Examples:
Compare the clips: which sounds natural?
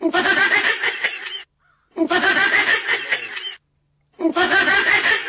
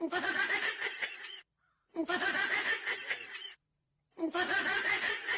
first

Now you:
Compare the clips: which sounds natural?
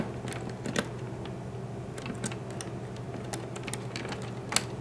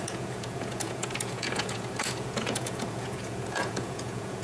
first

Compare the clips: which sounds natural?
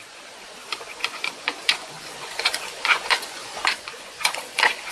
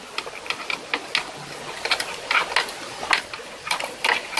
second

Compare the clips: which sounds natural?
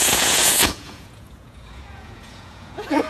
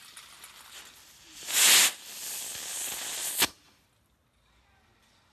second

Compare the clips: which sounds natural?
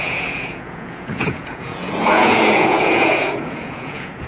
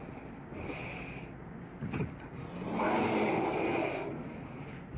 second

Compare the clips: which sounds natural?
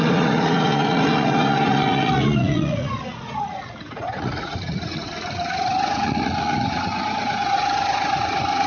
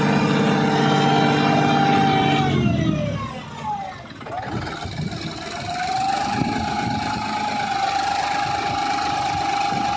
second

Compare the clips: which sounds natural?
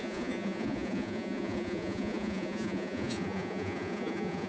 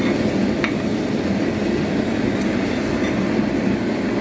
second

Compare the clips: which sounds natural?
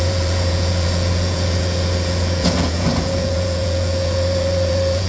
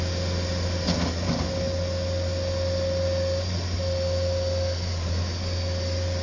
second